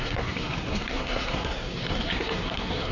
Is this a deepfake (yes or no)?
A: yes